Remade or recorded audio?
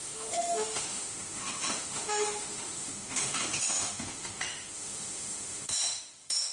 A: remade